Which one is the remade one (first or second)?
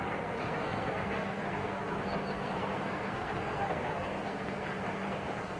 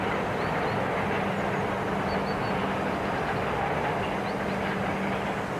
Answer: first